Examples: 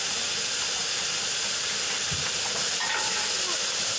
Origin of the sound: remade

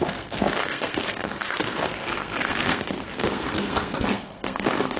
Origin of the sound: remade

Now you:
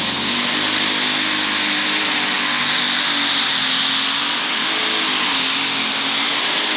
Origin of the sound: recorded